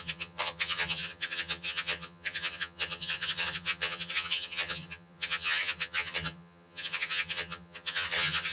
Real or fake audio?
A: fake